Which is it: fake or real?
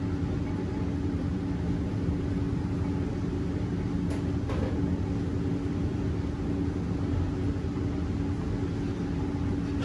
real